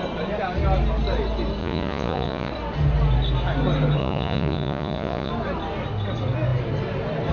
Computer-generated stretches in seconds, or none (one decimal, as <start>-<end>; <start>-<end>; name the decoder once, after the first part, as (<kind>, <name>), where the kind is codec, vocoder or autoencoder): 1.6-2.5 (vocoder, Vocos); 4.0-5.3